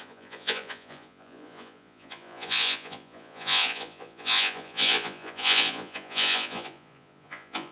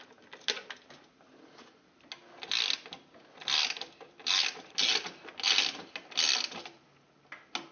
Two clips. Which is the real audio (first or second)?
second